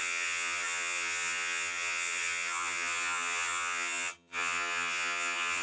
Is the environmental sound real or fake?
fake